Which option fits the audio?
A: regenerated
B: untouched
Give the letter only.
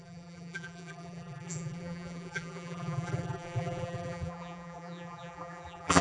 A